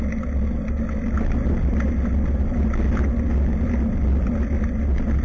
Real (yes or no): yes